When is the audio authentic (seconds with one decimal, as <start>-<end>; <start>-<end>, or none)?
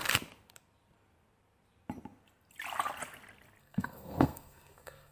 0.0-3.6